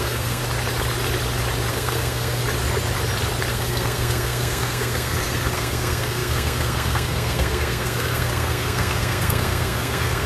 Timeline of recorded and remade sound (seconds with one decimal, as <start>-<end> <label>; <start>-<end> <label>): 0.0-0.4 remade; 0.4-1.7 recorded; 1.7-2.4 remade; 2.4-3.5 recorded; 3.5-10.3 remade